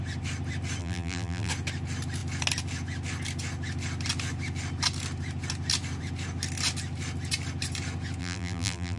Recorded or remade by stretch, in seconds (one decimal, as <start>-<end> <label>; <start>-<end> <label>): 0.0-0.8 recorded; 0.8-1.5 remade; 1.5-8.2 recorded; 8.2-9.0 remade